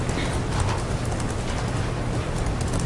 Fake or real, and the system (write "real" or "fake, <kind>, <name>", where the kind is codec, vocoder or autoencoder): real